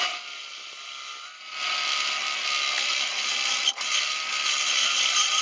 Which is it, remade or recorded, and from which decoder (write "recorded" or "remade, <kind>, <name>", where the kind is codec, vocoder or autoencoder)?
recorded